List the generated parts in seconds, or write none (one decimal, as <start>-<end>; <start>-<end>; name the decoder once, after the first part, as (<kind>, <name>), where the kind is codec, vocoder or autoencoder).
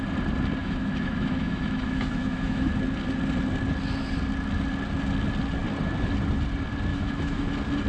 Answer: 0.6-2.7 (autoencoder, DAC-VAE); 6.9-7.5